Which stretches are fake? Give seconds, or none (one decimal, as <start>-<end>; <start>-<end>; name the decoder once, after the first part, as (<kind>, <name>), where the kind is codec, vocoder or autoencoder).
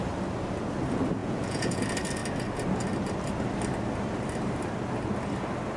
1.2-1.8 (vocoder, Vocos)